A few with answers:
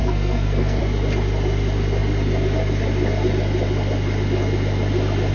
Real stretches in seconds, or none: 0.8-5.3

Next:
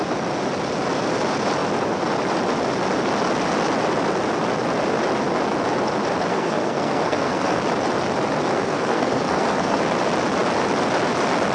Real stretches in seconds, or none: 0.0-6.3; 7.6-8.5; 9.8-11.5

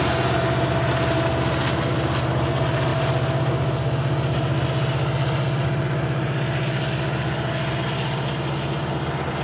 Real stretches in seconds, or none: 0.0-9.4

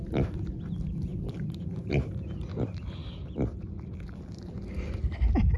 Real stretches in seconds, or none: 0.0-1.1; 2.4-5.6

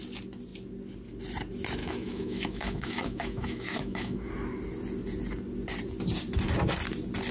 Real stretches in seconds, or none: 0.0-1.8; 4.3-7.3

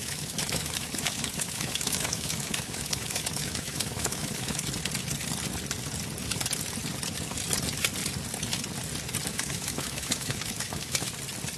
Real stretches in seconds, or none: 4.6-9.3; 11.1-11.6